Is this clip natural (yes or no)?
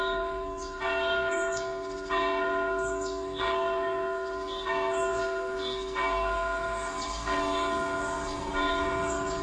no